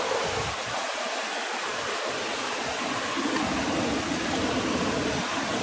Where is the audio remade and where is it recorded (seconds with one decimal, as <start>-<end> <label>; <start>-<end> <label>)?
0.0-5.6 recorded